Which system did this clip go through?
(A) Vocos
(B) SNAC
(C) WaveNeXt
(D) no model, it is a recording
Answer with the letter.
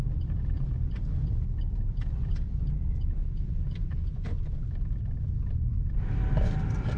D